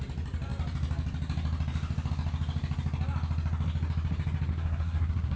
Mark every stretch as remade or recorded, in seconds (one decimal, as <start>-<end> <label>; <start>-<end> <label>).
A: 0.0-4.5 recorded; 4.5-5.4 remade